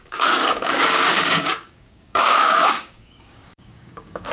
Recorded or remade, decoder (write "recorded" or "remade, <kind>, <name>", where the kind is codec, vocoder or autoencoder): remade, codec, DAC